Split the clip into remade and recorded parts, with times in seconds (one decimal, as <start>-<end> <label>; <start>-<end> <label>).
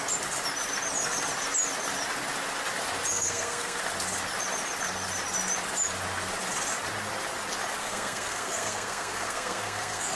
0.0-3.1 recorded; 3.1-3.8 remade; 3.8-7.8 recorded; 7.8-10.2 remade